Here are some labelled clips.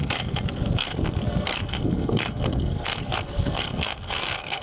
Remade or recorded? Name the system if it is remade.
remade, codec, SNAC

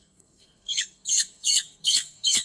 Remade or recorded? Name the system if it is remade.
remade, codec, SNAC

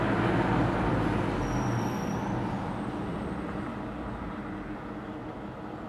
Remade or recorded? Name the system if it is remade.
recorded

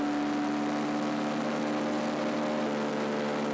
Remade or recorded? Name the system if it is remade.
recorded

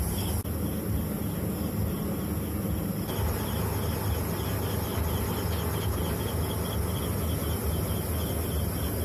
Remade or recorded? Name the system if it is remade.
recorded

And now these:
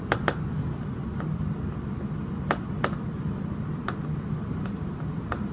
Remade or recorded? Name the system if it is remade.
recorded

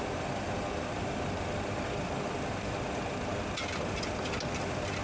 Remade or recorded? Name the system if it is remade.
recorded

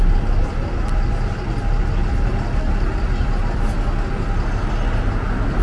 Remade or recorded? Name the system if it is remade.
recorded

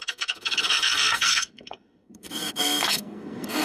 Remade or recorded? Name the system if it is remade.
remade, codec, SNAC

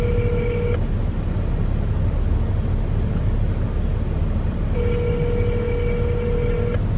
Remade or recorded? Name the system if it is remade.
recorded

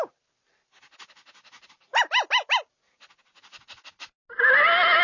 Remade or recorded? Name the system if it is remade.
recorded